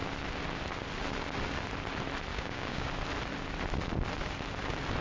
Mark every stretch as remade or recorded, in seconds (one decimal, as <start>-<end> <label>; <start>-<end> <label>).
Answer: 0.0-2.3 recorded; 2.3-2.9 remade; 2.9-5.0 recorded